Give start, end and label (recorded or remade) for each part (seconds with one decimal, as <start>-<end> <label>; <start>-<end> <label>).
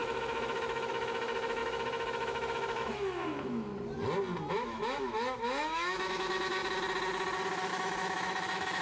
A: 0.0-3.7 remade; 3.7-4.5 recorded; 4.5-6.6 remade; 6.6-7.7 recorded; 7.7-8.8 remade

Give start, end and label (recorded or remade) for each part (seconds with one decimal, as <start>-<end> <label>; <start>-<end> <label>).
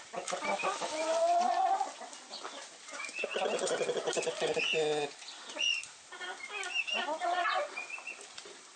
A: 0.0-3.3 recorded; 3.3-4.3 remade; 4.3-8.8 recorded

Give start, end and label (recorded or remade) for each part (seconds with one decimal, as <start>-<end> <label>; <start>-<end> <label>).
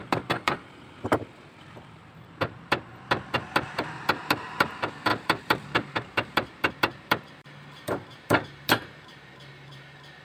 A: 0.0-10.2 remade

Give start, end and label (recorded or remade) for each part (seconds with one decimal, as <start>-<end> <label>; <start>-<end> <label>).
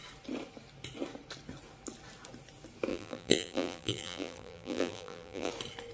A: 0.0-2.9 recorded; 2.9-5.5 remade; 5.5-5.9 recorded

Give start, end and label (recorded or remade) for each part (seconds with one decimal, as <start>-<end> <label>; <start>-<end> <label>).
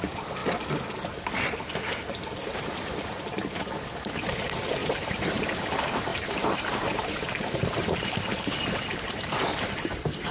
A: 0.0-4.8 recorded; 4.8-5.4 remade; 5.4-6.1 recorded; 6.1-7.8 remade; 7.8-10.3 recorded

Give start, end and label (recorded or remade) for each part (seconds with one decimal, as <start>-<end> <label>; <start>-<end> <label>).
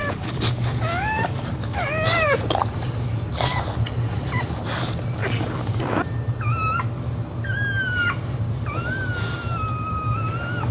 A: 0.0-2.4 remade; 2.4-5.2 recorded; 5.2-5.8 remade; 5.8-10.7 recorded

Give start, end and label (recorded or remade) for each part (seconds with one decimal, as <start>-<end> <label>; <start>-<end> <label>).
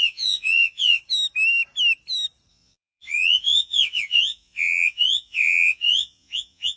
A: 0.0-1.0 remade; 1.0-2.5 recorded; 2.5-6.8 remade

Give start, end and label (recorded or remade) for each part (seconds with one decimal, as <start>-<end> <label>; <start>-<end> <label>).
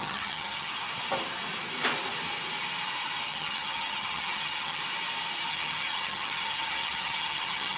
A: 0.0-0.7 remade; 0.7-3.3 recorded; 3.3-4.8 remade; 4.8-5.5 recorded; 5.5-7.8 remade